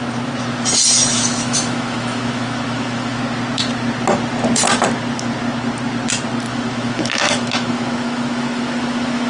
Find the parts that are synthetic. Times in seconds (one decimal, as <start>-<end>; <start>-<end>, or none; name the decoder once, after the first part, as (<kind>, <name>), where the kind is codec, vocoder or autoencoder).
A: 1.1-3.2 (autoencoder, DAC-VAE); 6.5-9.3